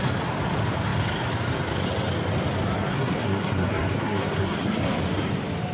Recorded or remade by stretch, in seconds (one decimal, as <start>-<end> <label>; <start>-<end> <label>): 0.0-2.9 recorded; 2.9-5.0 remade; 5.0-5.7 recorded